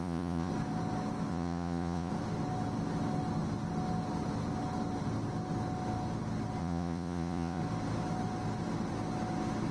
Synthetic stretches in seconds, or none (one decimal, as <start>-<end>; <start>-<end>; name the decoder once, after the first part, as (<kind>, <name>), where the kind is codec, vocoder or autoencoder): 0.0-0.5 (vocoder, Vocos); 1.3-2.1; 6.6-7.6